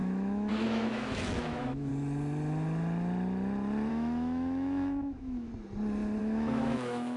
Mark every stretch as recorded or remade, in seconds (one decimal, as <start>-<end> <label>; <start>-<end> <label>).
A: 0.0-1.9 remade; 1.9-3.9 recorded; 3.9-5.5 remade; 5.5-6.2 recorded; 6.2-7.2 remade